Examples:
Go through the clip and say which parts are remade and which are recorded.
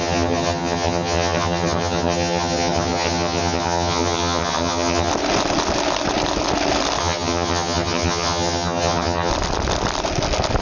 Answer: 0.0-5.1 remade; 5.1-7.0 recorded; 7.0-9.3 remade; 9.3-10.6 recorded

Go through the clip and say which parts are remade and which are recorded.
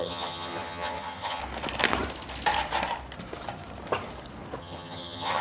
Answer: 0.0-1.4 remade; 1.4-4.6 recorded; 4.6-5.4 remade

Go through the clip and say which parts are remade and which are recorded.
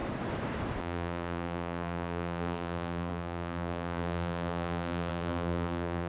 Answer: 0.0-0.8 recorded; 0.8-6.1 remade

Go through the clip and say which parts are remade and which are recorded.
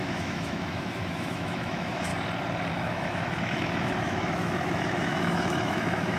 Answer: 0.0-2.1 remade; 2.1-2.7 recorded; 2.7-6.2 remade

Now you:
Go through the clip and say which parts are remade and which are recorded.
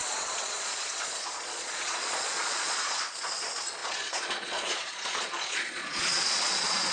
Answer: 0.0-6.9 remade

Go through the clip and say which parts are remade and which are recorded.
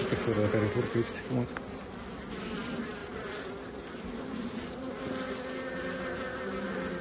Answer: 0.0-7.0 recorded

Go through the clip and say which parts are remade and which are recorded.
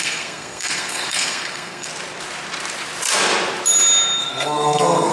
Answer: 0.0-1.9 remade; 1.9-4.2 recorded; 4.2-5.1 remade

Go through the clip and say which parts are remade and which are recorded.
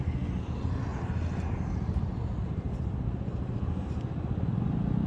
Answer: 0.0-5.1 recorded